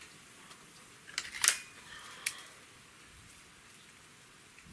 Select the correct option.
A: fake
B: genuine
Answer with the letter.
B